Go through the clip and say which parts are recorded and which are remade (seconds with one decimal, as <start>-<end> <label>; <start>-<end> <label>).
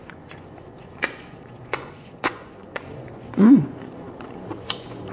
0.0-5.1 remade